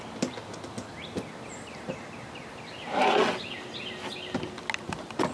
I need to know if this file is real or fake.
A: real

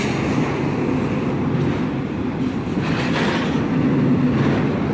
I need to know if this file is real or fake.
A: real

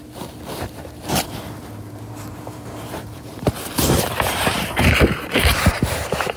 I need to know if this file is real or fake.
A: fake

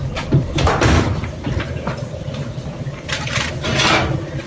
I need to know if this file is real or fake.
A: fake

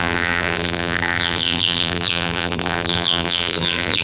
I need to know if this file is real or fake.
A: fake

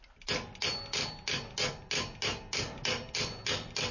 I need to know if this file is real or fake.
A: real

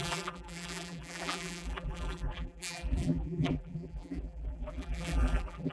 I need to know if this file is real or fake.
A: fake